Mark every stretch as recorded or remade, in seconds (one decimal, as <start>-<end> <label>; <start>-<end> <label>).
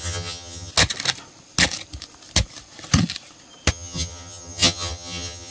0.0-0.7 remade; 0.7-3.7 recorded; 3.7-5.5 remade